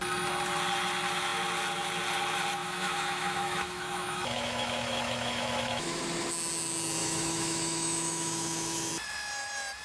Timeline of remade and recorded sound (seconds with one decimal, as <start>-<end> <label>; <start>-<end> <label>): 0.0-2.6 recorded; 2.6-6.0 remade; 6.0-7.0 recorded; 7.0-8.9 remade; 8.9-9.8 recorded